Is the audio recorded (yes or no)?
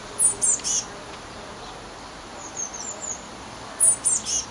yes